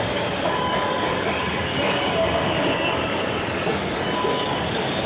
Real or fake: fake